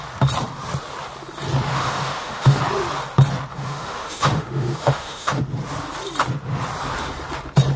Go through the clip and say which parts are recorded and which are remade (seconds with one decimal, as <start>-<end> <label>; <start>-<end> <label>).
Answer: 0.0-1.7 recorded; 1.7-2.6 remade; 2.6-3.5 recorded; 3.5-5.4 remade; 5.4-7.8 recorded